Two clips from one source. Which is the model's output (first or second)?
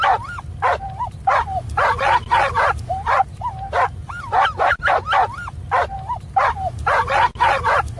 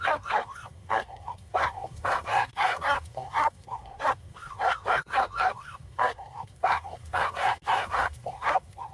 second